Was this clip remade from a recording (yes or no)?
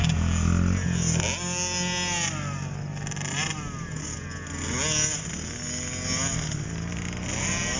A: no